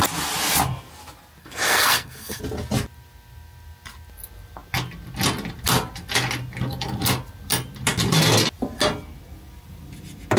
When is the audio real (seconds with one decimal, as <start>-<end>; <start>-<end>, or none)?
0.0-1.4; 2.4-10.4